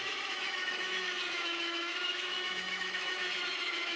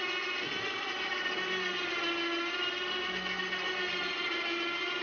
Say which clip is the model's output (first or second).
first